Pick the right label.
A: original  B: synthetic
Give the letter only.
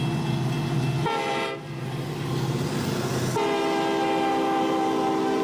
A